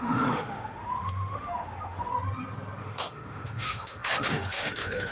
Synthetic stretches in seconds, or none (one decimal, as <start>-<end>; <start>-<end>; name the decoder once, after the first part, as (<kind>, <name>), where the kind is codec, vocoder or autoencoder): 0.0-2.1 (autoencoder, DAC-VAE); 2.8-5.1